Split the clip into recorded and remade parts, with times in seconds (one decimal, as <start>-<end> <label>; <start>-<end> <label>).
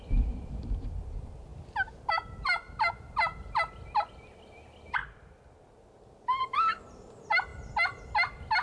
0.0-1.5 remade; 1.5-2.9 recorded; 2.9-5.0 remade; 5.0-6.4 recorded; 6.4-7.5 remade; 7.5-8.0 recorded; 8.0-8.6 remade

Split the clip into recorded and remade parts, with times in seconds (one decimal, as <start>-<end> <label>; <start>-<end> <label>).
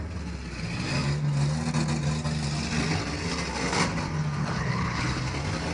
0.0-4.4 recorded; 4.4-5.2 remade; 5.2-5.7 recorded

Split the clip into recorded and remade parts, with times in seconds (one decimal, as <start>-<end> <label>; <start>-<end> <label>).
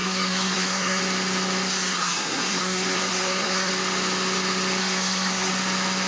0.0-1.0 remade; 1.0-1.9 recorded; 1.9-3.7 remade; 3.7-4.8 recorded; 4.8-5.5 remade; 5.5-6.1 recorded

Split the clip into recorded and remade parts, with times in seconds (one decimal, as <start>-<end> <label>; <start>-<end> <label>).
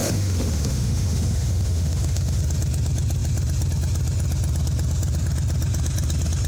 0.0-2.4 remade; 2.4-6.5 recorded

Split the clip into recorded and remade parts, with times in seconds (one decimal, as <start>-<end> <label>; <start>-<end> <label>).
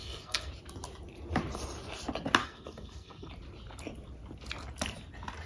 0.0-0.5 remade; 0.5-2.4 recorded; 2.4-3.3 remade; 3.3-5.5 recorded